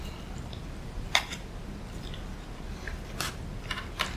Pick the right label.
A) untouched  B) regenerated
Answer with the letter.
A